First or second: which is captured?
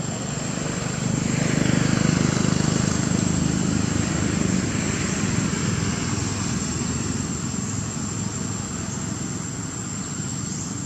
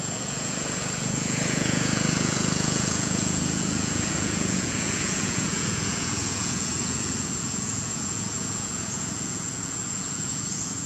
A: first